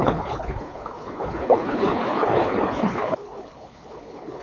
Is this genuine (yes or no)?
no